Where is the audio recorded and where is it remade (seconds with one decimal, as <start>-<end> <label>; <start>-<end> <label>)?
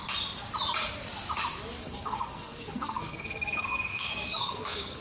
0.0-1.8 recorded; 1.8-5.0 remade